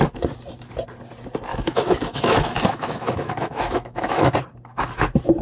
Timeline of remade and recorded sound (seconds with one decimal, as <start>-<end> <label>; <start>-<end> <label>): 0.0-1.5 recorded; 1.5-4.3 remade; 4.3-5.4 recorded